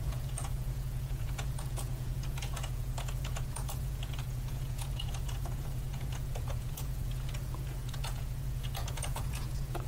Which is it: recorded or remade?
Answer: remade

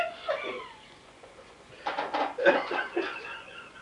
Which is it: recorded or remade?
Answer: remade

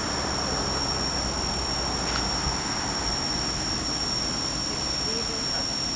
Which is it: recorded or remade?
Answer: recorded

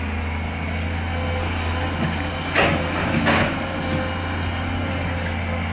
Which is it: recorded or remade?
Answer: recorded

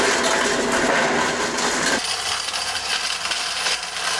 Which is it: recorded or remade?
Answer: recorded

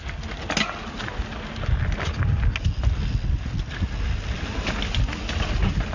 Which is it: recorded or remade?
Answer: recorded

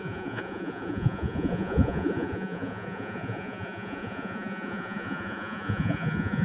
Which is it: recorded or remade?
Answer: remade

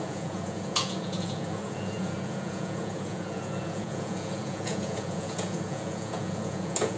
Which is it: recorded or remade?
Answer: remade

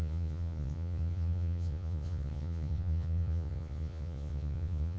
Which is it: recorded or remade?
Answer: remade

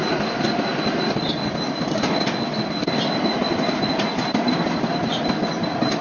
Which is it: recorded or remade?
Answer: recorded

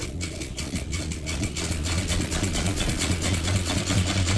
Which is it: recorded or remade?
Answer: remade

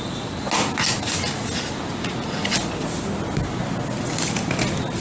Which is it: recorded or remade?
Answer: recorded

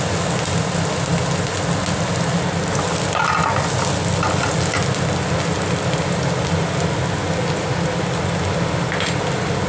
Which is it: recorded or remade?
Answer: recorded